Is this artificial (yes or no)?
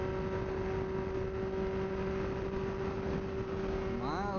no